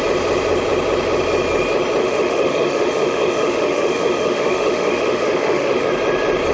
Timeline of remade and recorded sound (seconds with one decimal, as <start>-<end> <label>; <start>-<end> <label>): 0.0-2.0 recorded; 2.0-5.9 remade; 5.9-6.5 recorded